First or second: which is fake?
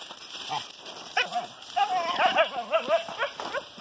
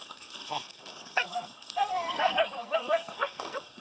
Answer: second